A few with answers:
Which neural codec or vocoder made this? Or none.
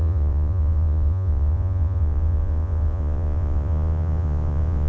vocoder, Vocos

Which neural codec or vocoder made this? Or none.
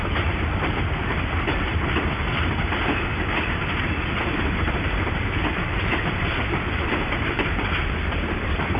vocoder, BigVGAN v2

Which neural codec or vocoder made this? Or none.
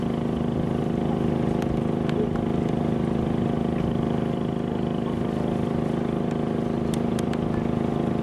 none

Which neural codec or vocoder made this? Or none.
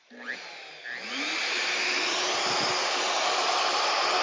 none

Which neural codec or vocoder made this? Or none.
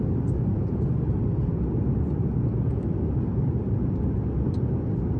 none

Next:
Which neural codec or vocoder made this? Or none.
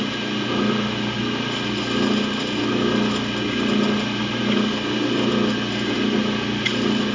none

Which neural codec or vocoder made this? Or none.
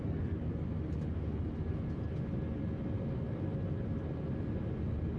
none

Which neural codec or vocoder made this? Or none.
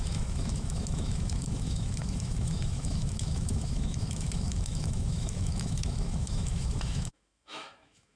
autoencoder, DAC-VAE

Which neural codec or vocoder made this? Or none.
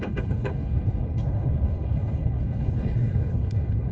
codec, HILCodec